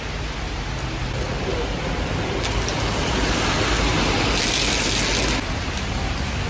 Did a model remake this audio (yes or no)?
no